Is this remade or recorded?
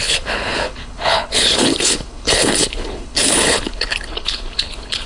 remade